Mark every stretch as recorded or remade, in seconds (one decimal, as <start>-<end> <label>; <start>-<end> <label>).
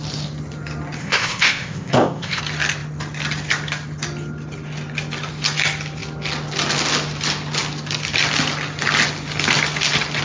0.0-1.0 recorded; 1.0-2.4 remade; 2.4-10.2 recorded